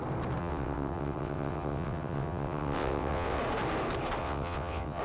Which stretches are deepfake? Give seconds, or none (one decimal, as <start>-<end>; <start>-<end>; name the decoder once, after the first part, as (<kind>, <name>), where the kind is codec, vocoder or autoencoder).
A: 0.4-3.4 (vocoder, WaveNeXt); 4.2-5.0